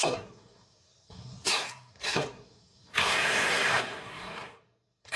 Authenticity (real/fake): fake